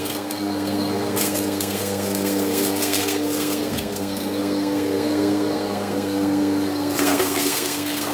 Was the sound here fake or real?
fake